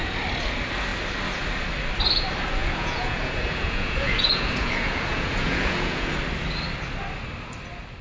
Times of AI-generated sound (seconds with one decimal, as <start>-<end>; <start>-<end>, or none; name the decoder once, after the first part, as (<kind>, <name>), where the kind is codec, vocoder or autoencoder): 2.6-6.1 (vocoder, Vocos)